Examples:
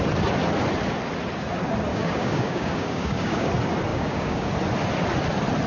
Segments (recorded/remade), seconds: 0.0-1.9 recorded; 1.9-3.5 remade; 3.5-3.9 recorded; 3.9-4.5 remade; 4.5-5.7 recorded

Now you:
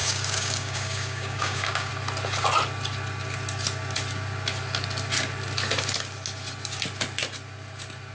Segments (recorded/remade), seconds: 0.0-1.9 remade; 1.9-8.1 recorded